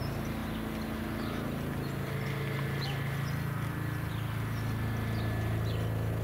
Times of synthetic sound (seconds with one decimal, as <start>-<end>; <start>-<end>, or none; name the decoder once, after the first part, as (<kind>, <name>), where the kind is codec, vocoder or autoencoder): none